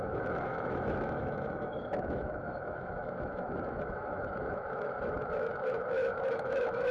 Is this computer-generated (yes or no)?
yes